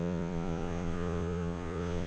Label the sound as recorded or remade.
remade